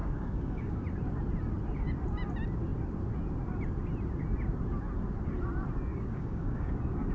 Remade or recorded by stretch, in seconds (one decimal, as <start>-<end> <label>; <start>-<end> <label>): 0.0-0.8 remade; 0.8-5.9 recorded; 5.9-7.1 remade